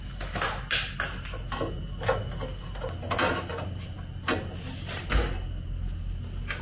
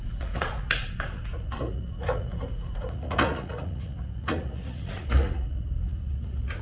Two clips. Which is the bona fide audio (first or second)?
first